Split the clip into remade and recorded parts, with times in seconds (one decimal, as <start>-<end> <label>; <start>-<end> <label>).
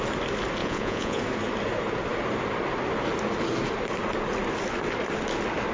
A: 0.0-0.6 recorded; 0.6-1.2 remade; 1.2-5.7 recorded